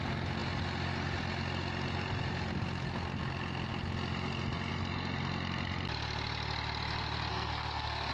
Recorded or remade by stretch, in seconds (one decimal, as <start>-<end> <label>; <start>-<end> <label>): 0.0-7.3 recorded; 7.3-8.1 remade